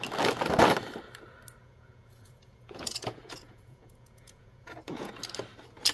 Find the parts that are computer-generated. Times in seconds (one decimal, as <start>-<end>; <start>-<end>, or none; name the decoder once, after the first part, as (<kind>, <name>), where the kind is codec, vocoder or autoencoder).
1.6-5.1 (vocoder, Vocos)